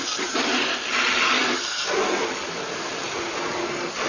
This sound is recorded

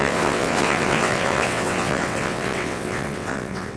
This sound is remade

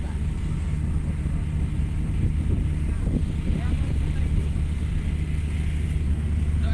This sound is recorded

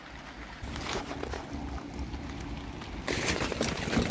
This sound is recorded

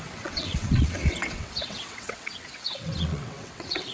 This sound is remade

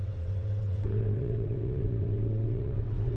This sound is remade